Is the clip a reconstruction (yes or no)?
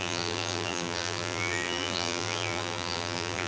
yes